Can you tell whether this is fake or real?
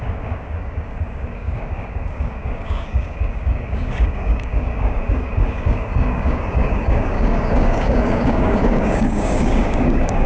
fake